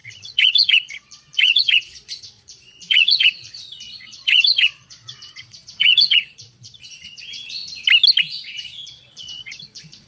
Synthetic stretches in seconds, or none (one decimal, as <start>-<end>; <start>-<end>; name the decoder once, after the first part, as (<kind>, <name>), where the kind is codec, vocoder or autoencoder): 0.0-7.6 (vocoder, Vocos); 8.2-10.1